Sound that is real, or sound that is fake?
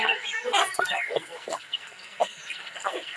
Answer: fake